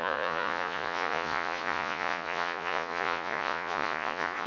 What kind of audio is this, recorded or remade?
remade